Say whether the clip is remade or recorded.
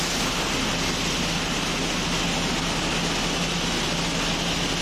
recorded